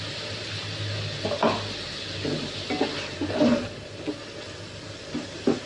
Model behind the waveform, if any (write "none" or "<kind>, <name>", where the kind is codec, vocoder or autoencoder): none